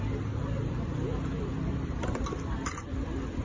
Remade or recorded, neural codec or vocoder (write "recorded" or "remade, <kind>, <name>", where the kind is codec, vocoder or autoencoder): recorded